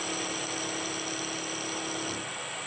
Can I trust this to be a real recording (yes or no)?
yes